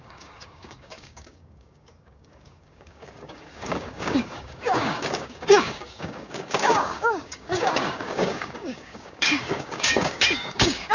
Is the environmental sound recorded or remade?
remade